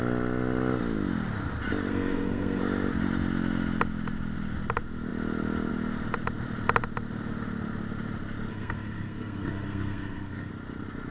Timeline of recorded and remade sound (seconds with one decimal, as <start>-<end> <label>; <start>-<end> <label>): 0.0-1.9 recorded; 1.9-2.6 remade; 2.6-8.5 recorded; 8.5-10.5 remade; 10.5-11.1 recorded